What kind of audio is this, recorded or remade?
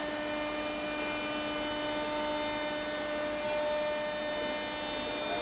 recorded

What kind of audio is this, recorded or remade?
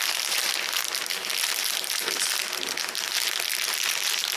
recorded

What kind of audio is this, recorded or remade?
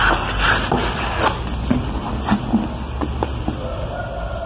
recorded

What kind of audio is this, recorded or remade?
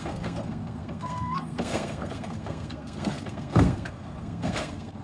remade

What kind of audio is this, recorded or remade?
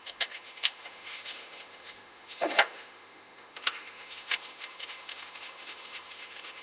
remade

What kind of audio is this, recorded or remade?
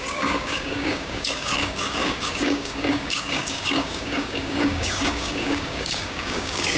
remade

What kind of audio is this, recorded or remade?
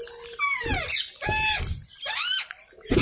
recorded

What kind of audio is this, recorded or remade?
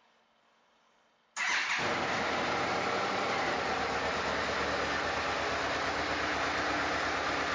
recorded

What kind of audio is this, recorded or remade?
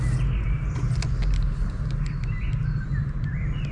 recorded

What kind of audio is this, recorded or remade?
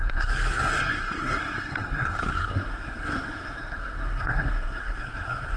remade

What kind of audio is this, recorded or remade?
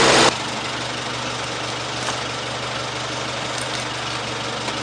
recorded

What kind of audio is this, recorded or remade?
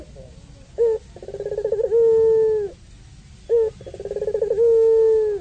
recorded